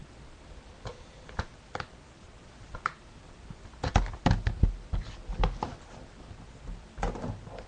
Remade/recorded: recorded